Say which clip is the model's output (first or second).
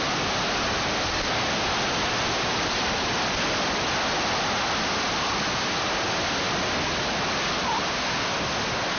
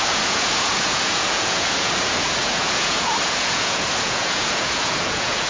second